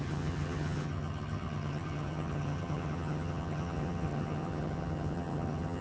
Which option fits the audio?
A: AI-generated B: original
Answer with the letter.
A